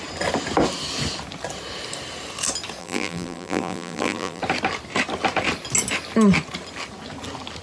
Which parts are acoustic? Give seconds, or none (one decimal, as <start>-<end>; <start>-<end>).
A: 0.0-2.8; 4.4-7.6